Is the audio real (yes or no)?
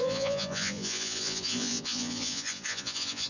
no